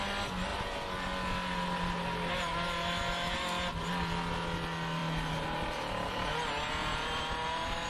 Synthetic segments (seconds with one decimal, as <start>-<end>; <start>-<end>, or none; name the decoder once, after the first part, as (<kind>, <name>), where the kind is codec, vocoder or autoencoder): 6.8-7.9 (vocoder, BigVGAN v2)